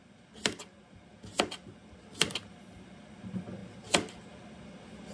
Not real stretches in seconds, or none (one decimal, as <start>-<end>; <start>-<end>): none